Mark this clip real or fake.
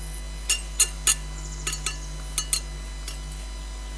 real